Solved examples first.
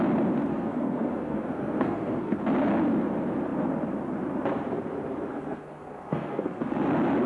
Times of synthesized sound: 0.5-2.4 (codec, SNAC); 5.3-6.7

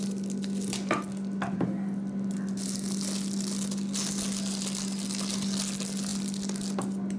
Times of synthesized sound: none

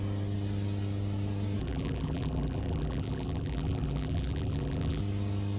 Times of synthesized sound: 1.6-5.0 (vocoder, BigVGAN v2)

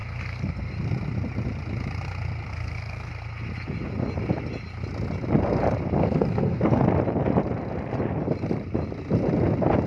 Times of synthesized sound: 0.0-0.7 (codec, SNAC); 2.5-3.1; 6.0-6.8

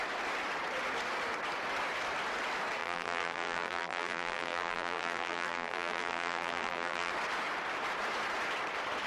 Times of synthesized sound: 2.8-7.1 (vocoder, BigVGAN v2)

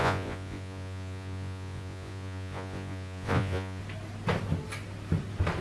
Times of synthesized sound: 0.0-3.8 (vocoder, Vocos)